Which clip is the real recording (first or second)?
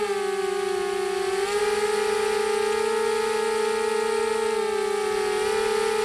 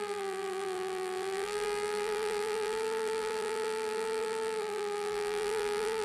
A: first